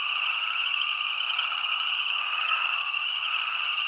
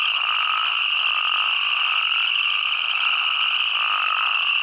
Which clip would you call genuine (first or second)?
second